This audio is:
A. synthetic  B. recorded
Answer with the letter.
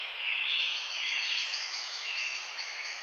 A